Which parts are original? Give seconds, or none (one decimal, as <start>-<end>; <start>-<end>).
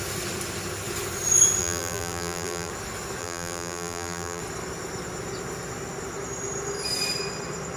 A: 0.0-1.6; 2.7-3.2; 4.4-7.8